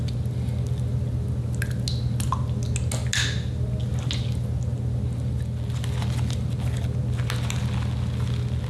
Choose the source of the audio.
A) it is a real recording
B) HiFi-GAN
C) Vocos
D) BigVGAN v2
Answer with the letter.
A